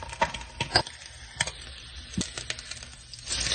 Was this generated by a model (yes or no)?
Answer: no